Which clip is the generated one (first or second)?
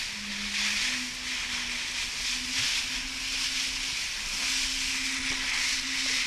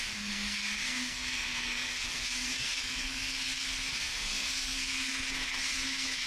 second